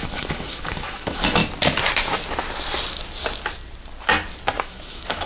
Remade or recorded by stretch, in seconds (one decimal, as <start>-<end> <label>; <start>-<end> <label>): 0.0-1.4 remade; 1.4-4.6 recorded; 4.6-5.3 remade